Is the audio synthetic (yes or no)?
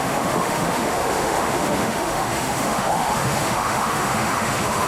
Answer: yes